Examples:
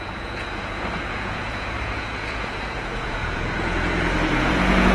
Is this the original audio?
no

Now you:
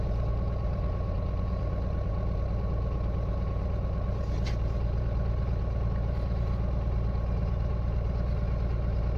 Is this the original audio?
yes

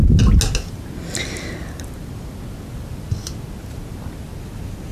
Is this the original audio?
yes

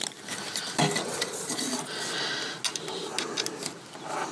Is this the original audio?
yes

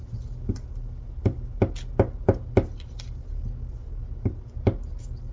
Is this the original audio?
yes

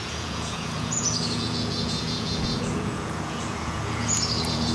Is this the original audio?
no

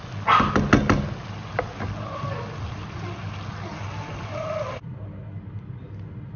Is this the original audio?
yes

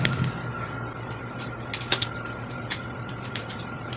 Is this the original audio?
yes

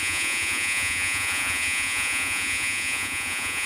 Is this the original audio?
no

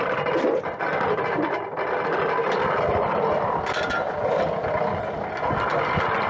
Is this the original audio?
yes